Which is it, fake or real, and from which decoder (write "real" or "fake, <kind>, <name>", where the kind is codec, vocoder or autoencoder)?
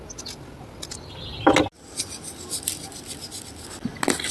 real